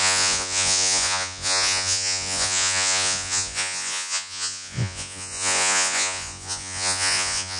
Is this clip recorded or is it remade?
remade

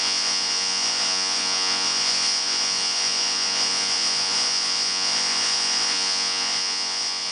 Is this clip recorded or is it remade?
remade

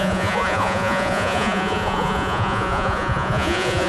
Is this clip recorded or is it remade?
remade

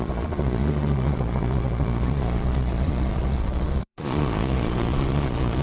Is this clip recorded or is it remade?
remade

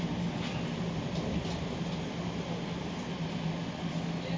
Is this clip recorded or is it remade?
recorded